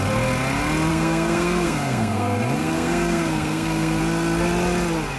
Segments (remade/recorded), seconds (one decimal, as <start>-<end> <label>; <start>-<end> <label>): 0.0-0.9 recorded; 0.9-4.0 remade; 4.0-5.2 recorded